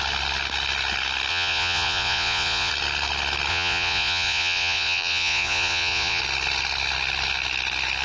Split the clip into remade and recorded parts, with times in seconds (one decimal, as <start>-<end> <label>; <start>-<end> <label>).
0.0-1.3 recorded; 1.3-2.7 remade; 2.7-3.5 recorded; 3.5-6.2 remade; 6.2-8.0 recorded